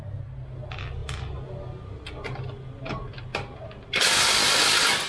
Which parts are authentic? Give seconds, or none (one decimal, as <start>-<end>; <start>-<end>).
0.0-5.1